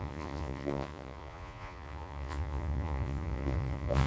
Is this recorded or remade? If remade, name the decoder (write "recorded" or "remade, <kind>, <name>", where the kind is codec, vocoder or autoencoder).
remade, vocoder, Vocos